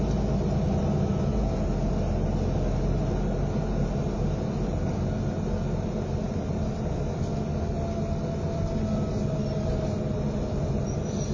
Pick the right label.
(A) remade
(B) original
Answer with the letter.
B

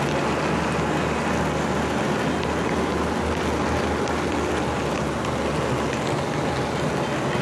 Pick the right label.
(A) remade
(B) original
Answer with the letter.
B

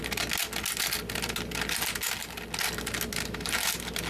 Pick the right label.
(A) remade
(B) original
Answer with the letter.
B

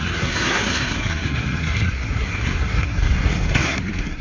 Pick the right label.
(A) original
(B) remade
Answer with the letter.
B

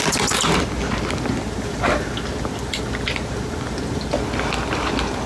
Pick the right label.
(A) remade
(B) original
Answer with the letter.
B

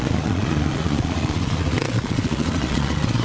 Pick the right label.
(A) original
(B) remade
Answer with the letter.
B